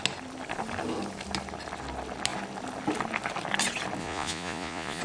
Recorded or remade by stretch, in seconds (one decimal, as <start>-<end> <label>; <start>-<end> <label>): 0.0-4.0 recorded; 4.0-5.0 remade